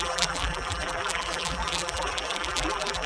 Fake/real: fake